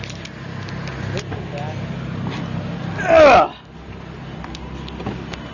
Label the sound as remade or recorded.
recorded